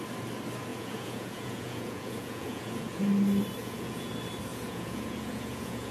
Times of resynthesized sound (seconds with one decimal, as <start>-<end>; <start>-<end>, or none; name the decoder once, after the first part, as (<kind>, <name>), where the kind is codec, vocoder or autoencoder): 0.7-3.0 (vocoder, Vocos); 3.6-4.1; 4.5-5.9